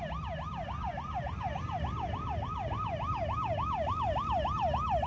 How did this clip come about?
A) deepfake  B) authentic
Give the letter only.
B